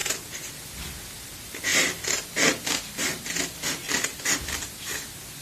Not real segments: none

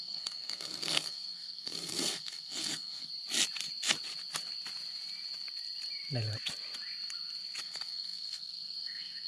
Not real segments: 0.0-3.1 (codec, SNAC); 7.6-9.3